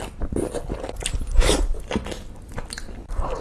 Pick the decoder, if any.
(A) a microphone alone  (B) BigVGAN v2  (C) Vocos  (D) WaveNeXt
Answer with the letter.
A